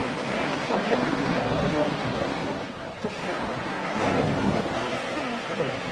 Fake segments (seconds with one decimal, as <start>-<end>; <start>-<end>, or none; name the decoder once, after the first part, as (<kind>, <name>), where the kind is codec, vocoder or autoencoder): 0.0-5.9 (codec, SNAC)